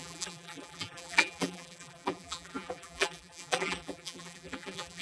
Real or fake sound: fake